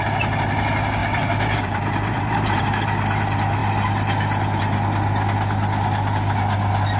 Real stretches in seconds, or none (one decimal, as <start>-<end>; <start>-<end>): 0.0-1.0; 2.6-7.0

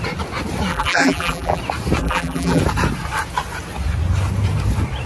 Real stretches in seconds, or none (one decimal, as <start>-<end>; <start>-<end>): 0.0-0.7; 1.6-2.0; 2.6-5.1

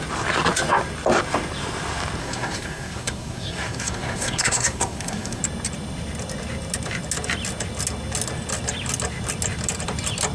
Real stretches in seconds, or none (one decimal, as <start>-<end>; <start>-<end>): 0.0-2.2; 5.4-10.3

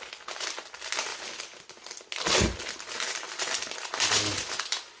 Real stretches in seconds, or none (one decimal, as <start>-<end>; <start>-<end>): 0.0-5.0

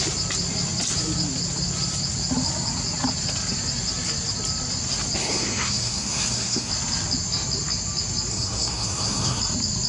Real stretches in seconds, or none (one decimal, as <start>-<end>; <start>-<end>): 0.0-5.2; 6.7-8.3; 9.4-9.9

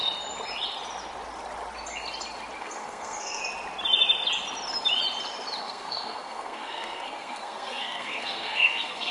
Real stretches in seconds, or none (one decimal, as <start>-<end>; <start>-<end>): 0.0-2.6; 3.4-5.6

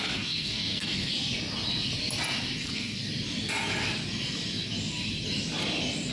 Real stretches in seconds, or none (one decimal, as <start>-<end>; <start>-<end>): 1.1-2.6; 3.0-6.1